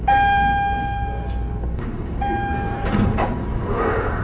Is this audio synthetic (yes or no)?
yes